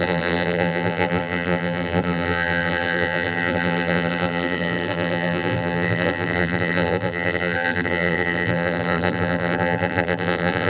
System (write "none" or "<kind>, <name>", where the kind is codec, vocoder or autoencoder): vocoder, BigVGAN v2